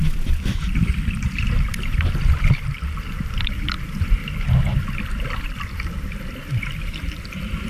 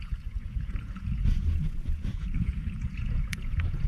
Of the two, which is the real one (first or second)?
first